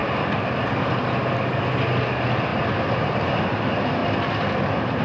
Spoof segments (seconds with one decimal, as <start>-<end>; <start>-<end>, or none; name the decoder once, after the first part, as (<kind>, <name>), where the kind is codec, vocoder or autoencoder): none

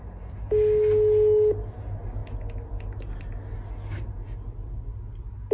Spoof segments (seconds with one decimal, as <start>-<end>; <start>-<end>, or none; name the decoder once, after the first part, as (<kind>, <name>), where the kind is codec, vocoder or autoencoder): none

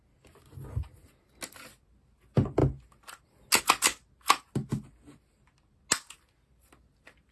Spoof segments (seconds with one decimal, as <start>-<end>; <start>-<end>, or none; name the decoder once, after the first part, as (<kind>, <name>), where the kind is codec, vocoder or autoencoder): none

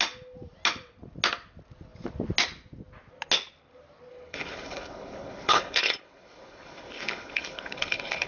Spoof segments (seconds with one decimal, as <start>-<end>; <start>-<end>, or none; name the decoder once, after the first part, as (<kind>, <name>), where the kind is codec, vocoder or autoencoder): 4.1-8.3 (codec, HILCodec)